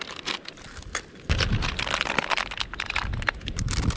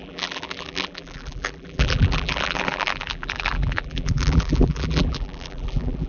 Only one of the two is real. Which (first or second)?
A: first